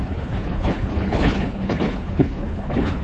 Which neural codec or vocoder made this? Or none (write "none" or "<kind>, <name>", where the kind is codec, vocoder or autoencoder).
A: codec, HILCodec